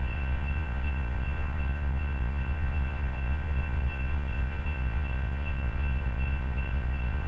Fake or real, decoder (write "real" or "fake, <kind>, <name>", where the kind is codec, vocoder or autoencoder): fake, vocoder, Vocos